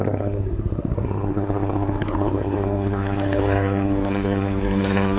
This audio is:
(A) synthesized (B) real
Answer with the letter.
A